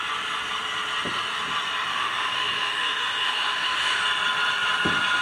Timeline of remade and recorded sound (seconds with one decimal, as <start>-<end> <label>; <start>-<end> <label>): 0.0-1.9 recorded; 1.9-4.0 remade; 4.0-5.2 recorded